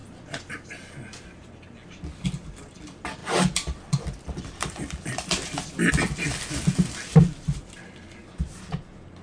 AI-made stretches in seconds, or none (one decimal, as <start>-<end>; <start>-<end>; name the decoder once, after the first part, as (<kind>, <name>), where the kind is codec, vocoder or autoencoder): 0.0-0.5 (vocoder, BigVGAN v2); 3.2-5.9; 8.2-9.2